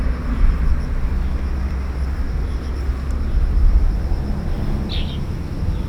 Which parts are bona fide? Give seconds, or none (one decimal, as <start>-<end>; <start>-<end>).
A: 0.0-5.9